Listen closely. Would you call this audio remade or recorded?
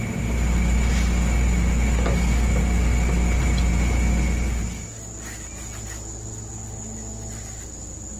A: recorded